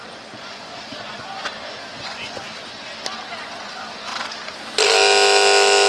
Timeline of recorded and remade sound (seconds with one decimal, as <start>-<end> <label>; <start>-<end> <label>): 0.0-2.9 remade; 2.9-3.4 recorded; 3.4-4.1 remade; 4.1-5.9 recorded